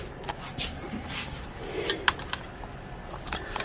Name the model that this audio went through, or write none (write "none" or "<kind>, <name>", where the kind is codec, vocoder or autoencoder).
none